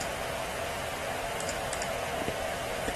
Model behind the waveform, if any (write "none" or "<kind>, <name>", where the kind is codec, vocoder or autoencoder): none